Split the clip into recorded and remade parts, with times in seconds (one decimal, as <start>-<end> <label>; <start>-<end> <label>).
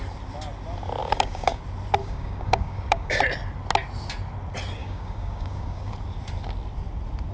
0.0-1.0 recorded; 1.0-1.6 remade; 1.6-2.0 recorded; 2.0-3.2 remade; 3.2-4.8 recorded; 4.8-5.9 remade; 5.9-7.3 recorded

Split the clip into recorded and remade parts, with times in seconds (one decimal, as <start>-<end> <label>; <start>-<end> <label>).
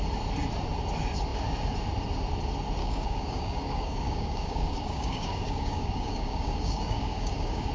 0.0-2.8 recorded; 2.8-7.7 remade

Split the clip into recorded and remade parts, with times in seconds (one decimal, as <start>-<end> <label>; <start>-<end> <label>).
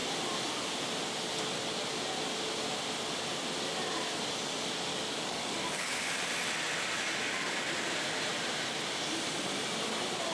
0.0-4.9 recorded; 4.9-6.0 remade; 6.0-10.3 recorded